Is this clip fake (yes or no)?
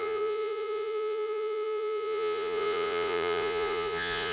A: yes